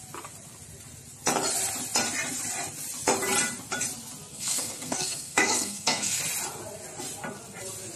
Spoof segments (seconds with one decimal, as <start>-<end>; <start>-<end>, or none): 4.3-6.2